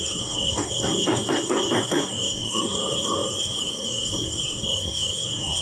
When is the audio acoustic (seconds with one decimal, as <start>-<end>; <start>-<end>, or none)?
none